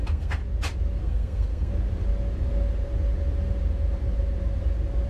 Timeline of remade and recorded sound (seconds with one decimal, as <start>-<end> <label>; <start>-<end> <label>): 0.0-0.4 remade; 0.4-1.0 recorded; 1.0-1.7 remade; 1.7-5.1 recorded